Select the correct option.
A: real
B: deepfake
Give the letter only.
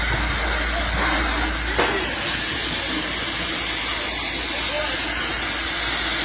A